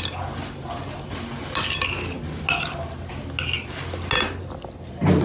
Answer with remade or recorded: recorded